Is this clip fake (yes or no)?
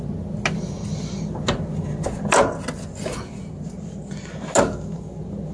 no